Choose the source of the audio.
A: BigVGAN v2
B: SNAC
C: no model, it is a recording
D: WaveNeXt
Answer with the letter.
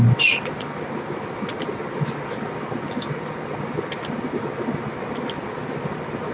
C